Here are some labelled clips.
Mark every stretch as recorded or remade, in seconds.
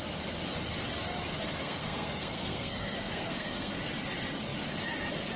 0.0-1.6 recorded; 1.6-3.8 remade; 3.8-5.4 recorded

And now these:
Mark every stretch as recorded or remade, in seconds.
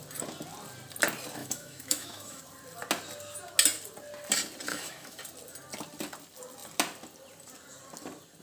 0.0-1.4 recorded; 1.4-2.4 remade; 2.4-4.7 recorded; 4.7-5.2 remade; 5.2-8.4 recorded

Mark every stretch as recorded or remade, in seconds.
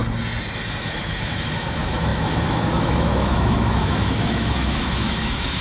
0.0-0.8 recorded; 0.8-5.6 remade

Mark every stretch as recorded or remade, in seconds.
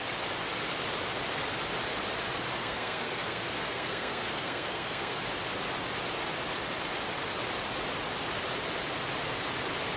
0.0-2.6 recorded; 2.6-5.2 remade; 5.2-10.0 recorded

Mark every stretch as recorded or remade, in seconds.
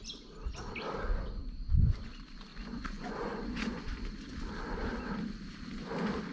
0.0-2.5 recorded; 2.5-4.0 remade; 4.0-6.3 recorded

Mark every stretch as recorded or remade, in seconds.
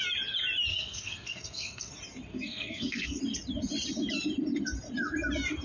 0.0-0.7 recorded; 0.7-1.9 remade; 1.9-2.3 recorded; 2.3-3.2 remade; 3.2-5.6 recorded